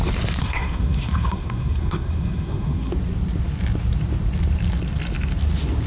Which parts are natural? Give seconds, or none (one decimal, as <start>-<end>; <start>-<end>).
0.0-0.4; 2.9-5.9